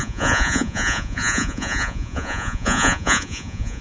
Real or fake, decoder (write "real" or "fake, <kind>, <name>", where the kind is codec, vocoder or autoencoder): fake, vocoder, Vocos